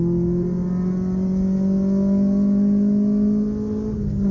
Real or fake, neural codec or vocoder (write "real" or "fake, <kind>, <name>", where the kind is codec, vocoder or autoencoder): real